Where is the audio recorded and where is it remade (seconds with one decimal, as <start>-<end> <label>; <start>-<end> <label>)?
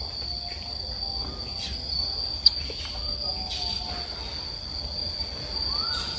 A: 0.0-6.2 recorded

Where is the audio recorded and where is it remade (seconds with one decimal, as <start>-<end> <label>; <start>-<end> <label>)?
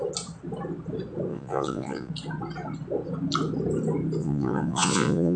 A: 0.0-1.3 recorded; 1.3-2.1 remade; 2.1-4.2 recorded; 4.2-5.4 remade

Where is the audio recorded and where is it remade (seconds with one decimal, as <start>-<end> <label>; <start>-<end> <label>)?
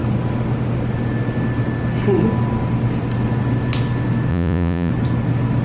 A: 0.0-4.3 recorded; 4.3-4.9 remade; 4.9-5.6 recorded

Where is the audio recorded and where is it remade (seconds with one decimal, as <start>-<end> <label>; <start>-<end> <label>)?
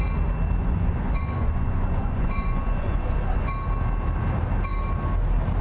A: 0.0-0.6 recorded; 0.6-3.5 remade; 3.5-5.6 recorded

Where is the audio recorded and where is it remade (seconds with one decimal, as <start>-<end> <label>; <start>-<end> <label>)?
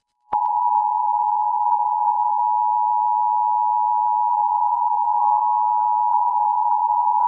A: 0.0-2.4 remade; 2.4-4.3 recorded; 4.3-5.4 remade; 5.4-6.1 recorded; 6.1-7.3 remade